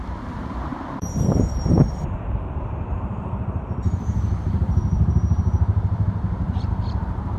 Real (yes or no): no